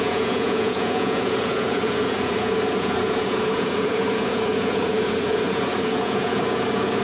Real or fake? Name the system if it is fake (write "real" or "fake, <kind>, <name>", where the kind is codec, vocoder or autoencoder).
fake, vocoder, Vocos